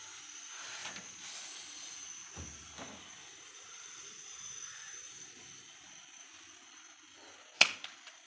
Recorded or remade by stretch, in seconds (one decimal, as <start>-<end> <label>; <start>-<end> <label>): 0.0-8.3 recorded